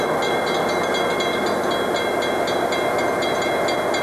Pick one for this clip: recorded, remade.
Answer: recorded